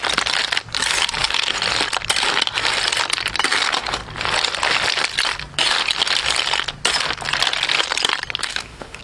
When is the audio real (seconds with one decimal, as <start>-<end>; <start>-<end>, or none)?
0.0-8.4